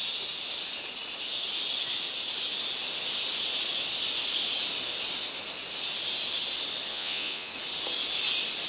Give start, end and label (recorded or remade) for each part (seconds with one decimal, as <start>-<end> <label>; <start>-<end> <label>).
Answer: 0.0-6.9 recorded; 6.9-7.5 remade; 7.5-8.7 recorded